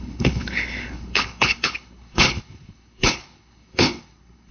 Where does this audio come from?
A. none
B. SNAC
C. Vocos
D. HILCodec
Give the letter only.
D